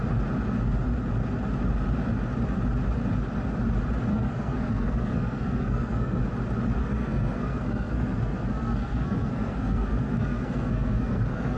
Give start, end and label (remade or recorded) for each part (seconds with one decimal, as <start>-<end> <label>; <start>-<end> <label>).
0.0-4.1 recorded; 4.1-6.2 remade; 6.2-6.8 recorded; 6.8-11.6 remade